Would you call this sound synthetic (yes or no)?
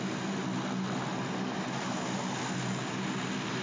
no